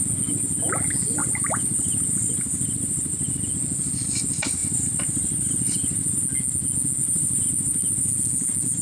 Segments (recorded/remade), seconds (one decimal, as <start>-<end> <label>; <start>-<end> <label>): 0.0-1.2 recorded; 1.2-3.5 remade; 3.5-4.6 recorded; 4.6-6.2 remade; 6.2-7.0 recorded; 7.0-8.1 remade; 8.1-8.8 recorded